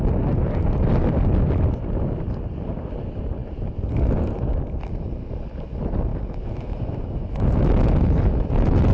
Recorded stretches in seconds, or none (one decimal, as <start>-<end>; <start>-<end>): 0.0-6.1